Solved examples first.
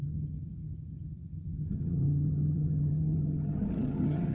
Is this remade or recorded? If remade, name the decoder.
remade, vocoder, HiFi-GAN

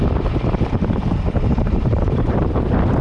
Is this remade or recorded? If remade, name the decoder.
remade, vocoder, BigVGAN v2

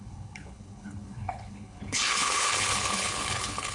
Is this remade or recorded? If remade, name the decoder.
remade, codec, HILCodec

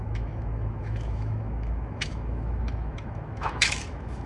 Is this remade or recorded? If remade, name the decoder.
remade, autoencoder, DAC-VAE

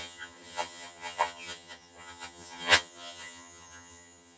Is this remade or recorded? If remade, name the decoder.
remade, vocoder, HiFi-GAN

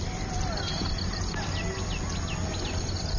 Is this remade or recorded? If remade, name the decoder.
recorded